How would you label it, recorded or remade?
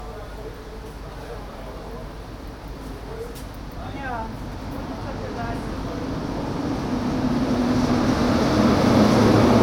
recorded